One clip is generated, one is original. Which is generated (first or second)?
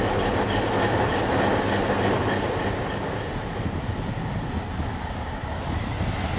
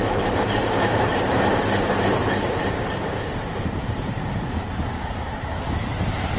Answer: second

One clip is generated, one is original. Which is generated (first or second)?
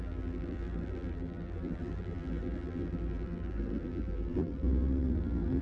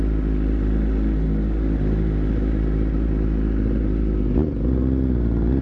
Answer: first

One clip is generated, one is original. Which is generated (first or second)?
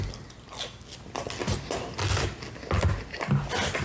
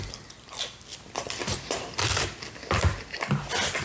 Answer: second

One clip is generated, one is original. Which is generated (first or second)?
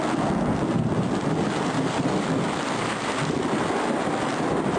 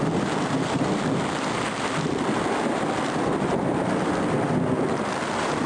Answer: second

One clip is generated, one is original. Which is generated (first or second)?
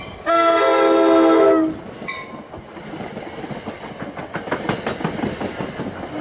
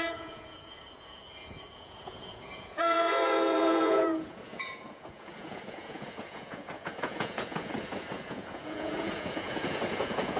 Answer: second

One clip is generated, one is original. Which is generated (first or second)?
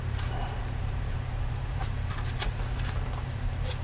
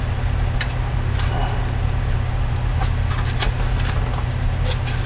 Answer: first